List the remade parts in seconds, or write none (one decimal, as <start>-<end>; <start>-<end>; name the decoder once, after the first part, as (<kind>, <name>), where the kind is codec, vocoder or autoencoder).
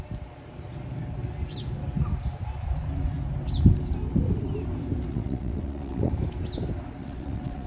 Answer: 5.1-6.1 (vocoder, WaveNeXt); 7.0-7.7